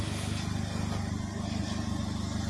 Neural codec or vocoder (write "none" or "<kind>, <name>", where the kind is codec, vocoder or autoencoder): none